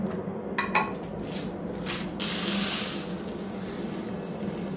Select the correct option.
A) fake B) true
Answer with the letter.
B